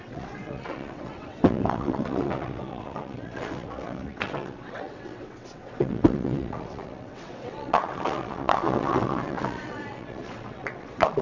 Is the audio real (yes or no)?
no